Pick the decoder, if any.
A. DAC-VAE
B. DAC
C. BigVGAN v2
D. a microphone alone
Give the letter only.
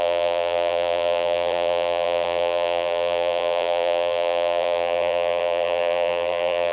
C